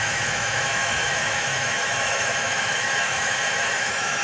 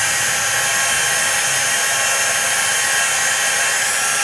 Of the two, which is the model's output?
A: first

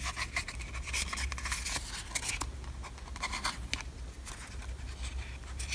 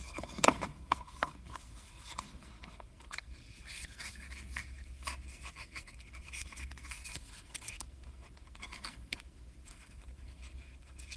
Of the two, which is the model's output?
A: second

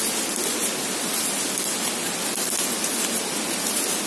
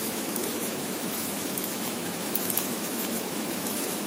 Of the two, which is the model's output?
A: second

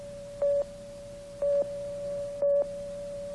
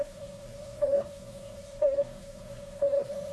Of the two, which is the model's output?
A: second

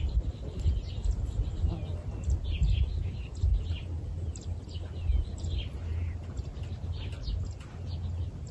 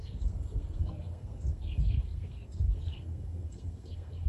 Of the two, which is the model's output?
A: second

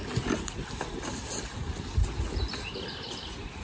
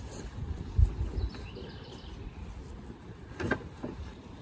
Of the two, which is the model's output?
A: first